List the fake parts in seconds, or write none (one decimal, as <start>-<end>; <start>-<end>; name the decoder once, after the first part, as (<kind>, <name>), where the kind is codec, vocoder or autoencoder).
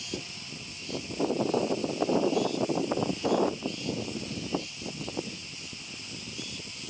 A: none